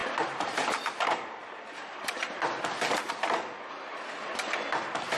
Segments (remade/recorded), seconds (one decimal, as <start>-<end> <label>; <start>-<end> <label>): 0.0-3.1 remade; 3.1-5.2 recorded

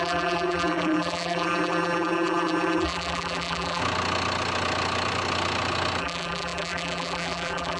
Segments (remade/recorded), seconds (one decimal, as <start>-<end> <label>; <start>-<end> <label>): 0.0-3.8 remade; 3.8-6.0 recorded; 6.0-7.8 remade

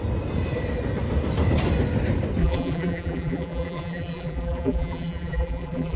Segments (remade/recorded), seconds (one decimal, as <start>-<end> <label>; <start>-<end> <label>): 0.0-2.4 recorded; 2.4-6.0 remade

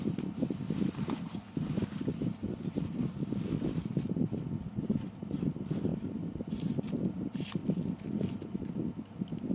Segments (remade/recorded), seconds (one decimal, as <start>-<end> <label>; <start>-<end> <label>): 0.0-7.6 remade; 7.6-9.5 recorded

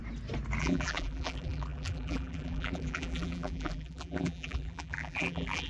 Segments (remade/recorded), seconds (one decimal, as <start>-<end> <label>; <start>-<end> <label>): 0.0-0.6 recorded; 0.6-5.7 remade